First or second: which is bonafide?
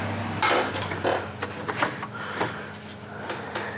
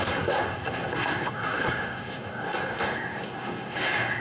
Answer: first